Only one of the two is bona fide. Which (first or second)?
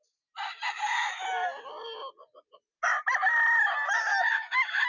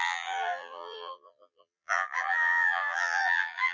first